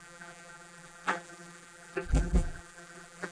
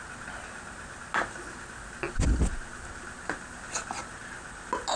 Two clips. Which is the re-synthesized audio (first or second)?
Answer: first